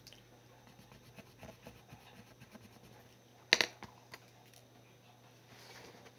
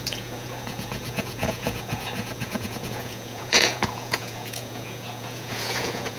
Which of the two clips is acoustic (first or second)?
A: first